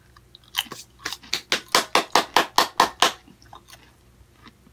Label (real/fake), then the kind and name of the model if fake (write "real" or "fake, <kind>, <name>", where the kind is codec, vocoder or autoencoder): real